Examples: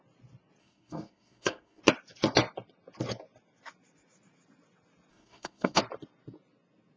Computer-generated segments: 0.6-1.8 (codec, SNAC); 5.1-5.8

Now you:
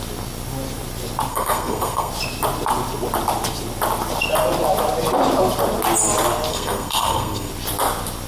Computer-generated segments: 1.3-2.1 (codec, SNAC); 6.5-7.5

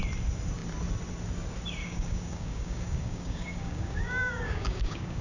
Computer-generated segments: 1.8-5.2 (codec, DAC)

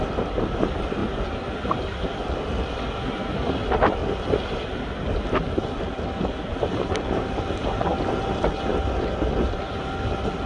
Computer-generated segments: none